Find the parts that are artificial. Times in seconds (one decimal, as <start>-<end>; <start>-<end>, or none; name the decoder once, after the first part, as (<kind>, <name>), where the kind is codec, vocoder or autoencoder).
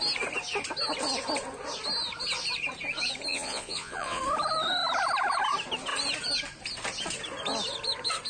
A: 3.3-4.2 (vocoder, Vocos)